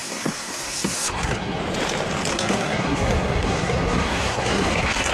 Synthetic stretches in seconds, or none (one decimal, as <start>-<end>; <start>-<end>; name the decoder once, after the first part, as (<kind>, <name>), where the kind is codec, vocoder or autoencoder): 0.0-1.6 (codec, SNAC); 2.3-5.1